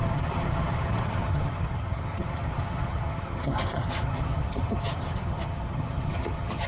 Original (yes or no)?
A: no